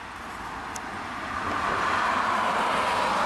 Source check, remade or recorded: recorded